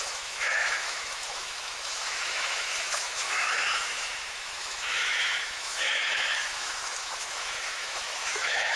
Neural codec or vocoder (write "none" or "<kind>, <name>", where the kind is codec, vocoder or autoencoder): autoencoder, DAC-VAE